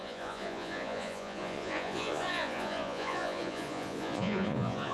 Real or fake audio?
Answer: fake